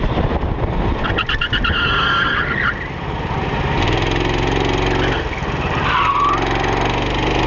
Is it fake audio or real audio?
real